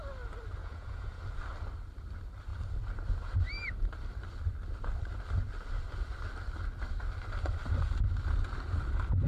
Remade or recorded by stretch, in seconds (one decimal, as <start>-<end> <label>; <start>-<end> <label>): 0.0-0.6 recorded; 0.6-1.2 remade; 1.2-9.3 recorded